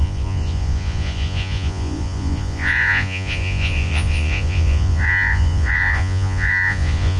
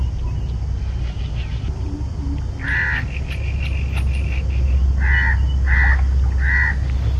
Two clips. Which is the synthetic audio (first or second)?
first